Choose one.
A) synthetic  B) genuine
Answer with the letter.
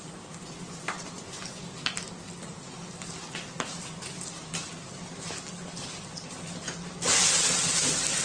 B